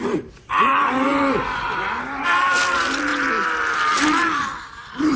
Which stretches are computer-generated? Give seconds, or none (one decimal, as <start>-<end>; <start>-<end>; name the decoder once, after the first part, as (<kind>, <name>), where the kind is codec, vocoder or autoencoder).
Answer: 0.0-1.1 (vocoder, BigVGAN v2); 2.0-3.1; 4.6-5.2